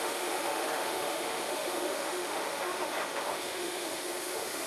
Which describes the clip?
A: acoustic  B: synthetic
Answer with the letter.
B